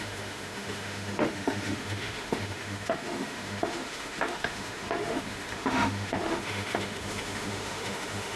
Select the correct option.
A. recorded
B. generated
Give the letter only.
B